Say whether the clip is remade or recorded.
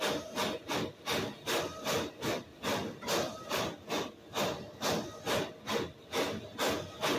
recorded